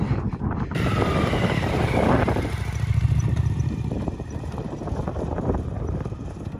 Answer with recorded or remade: remade